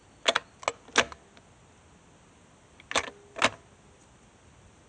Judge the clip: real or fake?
real